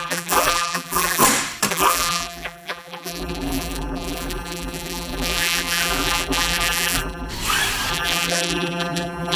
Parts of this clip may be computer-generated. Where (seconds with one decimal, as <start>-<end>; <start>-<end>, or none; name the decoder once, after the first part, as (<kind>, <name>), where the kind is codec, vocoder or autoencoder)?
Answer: 0.0-1.2 (vocoder, BigVGAN v2); 1.7-7.3; 7.9-9.4